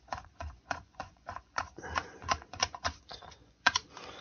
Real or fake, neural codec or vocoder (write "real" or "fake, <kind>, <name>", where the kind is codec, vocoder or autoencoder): fake, vocoder, Vocos